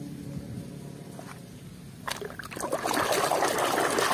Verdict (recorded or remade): recorded